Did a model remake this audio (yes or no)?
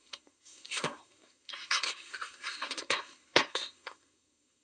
yes